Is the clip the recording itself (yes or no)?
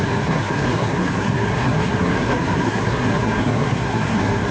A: no